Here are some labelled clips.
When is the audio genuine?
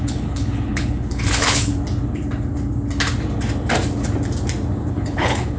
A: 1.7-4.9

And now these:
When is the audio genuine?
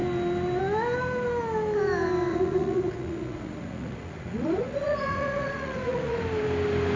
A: 0.0-2.3; 6.2-7.0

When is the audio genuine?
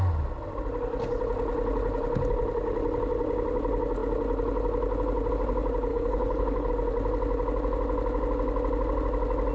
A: 0.0-5.9; 6.7-9.5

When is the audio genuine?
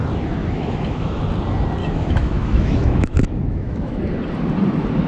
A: 0.0-0.4; 1.2-1.8; 4.0-5.1